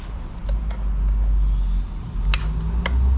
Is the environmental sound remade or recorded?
recorded